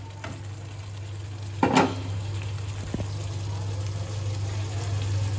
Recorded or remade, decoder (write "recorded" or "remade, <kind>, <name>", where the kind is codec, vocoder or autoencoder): recorded